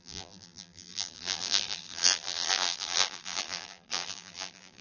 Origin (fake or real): fake